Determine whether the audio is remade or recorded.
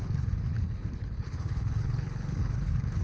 remade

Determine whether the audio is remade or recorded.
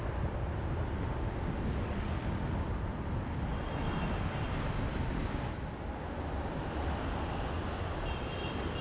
recorded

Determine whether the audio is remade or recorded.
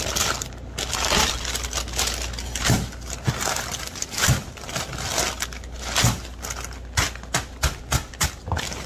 recorded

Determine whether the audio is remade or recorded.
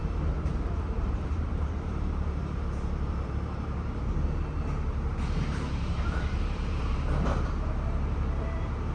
remade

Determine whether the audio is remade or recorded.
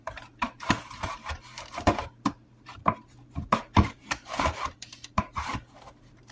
remade